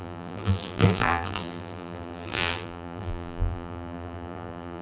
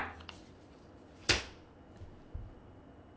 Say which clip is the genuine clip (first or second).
second